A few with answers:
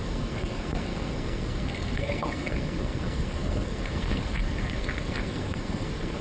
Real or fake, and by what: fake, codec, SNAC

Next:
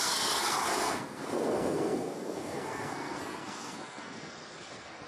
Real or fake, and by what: fake, codec, SNAC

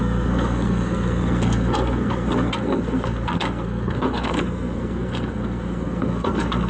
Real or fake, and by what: fake, codec, SNAC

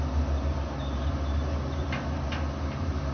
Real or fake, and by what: real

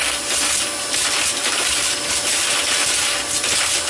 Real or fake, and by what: real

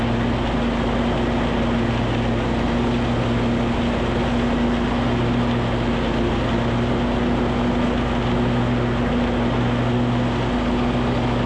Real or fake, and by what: real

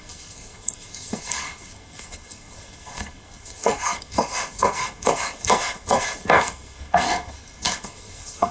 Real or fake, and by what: fake, codec, SNAC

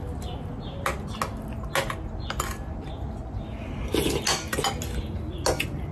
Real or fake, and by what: real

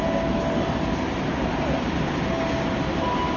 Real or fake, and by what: real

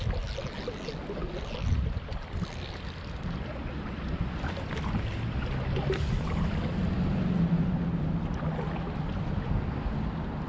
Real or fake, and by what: real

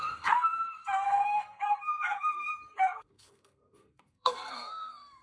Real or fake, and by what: fake, codec, SNAC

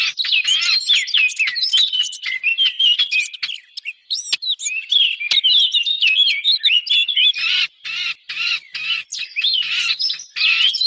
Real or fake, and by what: real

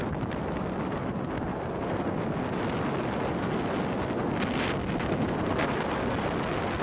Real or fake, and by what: real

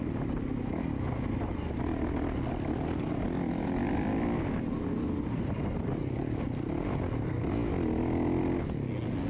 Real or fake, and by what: real